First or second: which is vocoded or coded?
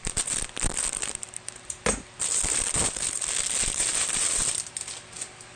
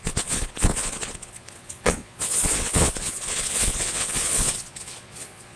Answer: second